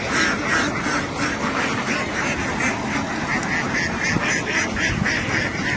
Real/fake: real